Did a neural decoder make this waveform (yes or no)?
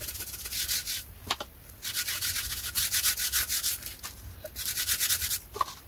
no